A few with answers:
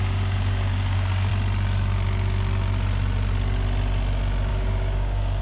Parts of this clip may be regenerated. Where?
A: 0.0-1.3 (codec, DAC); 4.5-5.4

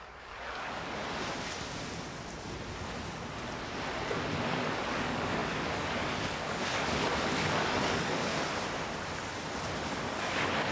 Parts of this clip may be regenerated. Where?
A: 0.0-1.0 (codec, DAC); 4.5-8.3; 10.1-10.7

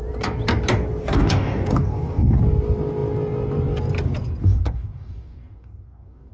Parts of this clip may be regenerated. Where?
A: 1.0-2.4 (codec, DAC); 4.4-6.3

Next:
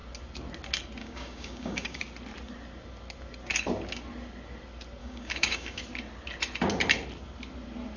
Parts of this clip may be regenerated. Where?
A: 1.0-2.0 (codec, DAC); 5.0-5.8

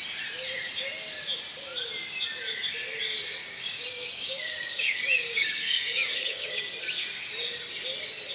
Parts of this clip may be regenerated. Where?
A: 3.4-6.6 (codec, DAC)